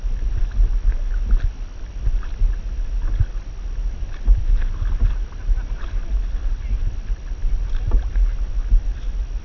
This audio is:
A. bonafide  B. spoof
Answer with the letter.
A